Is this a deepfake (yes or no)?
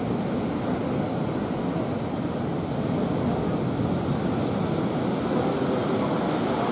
no